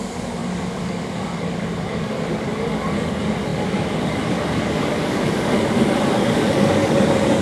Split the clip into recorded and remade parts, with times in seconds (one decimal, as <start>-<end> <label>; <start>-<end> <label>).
0.0-7.4 remade